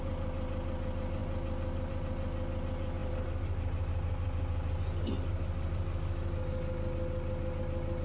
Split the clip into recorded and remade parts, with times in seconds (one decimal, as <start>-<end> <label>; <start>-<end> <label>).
0.0-8.0 recorded